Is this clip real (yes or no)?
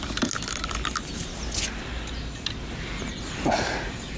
yes